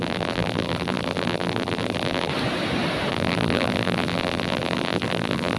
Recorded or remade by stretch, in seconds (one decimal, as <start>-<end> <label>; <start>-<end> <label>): 0.0-2.3 remade; 2.3-3.1 recorded; 3.1-5.6 remade

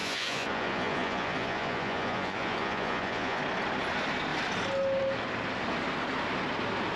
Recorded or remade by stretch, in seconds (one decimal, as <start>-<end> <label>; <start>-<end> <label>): 0.0-3.4 remade; 3.4-7.0 recorded